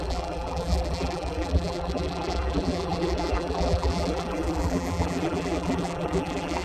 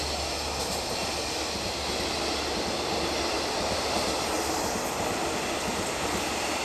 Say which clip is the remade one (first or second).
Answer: first